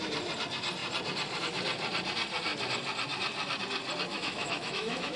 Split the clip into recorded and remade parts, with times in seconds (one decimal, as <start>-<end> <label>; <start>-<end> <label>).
0.0-4.1 recorded; 4.1-5.2 remade